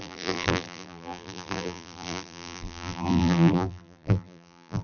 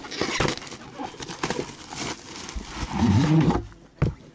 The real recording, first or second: second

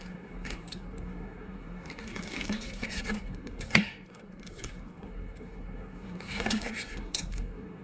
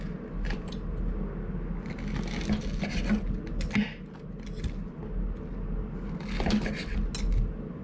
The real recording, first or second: second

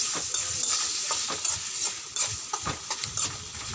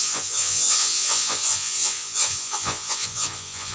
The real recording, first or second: first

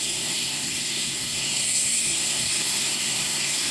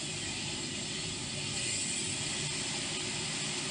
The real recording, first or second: second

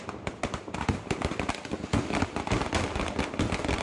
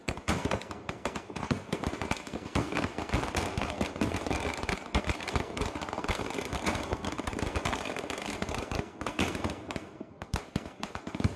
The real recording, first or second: first